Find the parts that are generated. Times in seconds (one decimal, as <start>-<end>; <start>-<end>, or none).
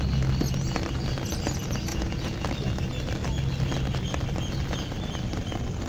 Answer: 1.9-2.5